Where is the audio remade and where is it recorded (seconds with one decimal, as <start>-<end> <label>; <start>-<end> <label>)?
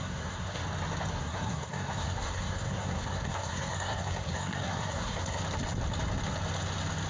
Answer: 0.0-0.6 remade; 0.6-1.1 recorded; 1.1-5.4 remade; 5.4-7.1 recorded